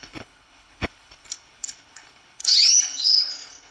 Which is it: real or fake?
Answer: fake